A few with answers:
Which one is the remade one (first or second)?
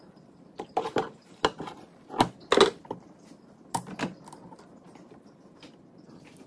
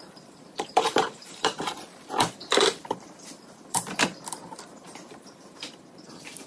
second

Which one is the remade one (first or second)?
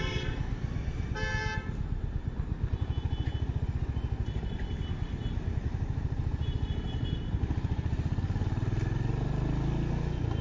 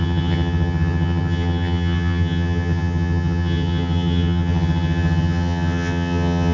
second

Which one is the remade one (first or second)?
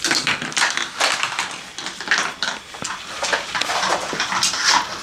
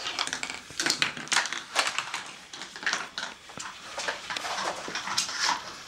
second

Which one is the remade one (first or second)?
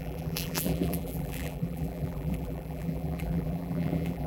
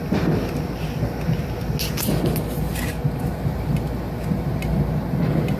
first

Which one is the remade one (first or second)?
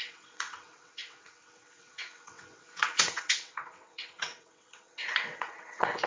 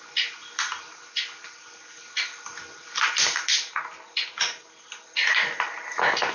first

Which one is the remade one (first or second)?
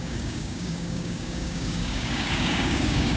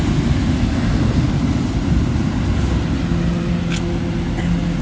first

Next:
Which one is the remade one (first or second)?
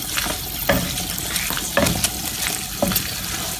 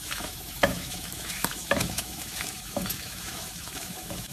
second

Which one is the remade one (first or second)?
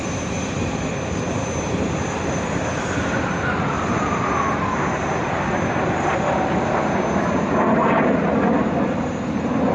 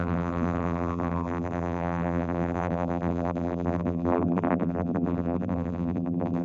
second